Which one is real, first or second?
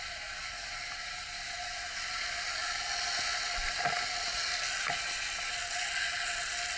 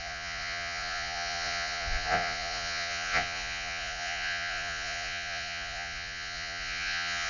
first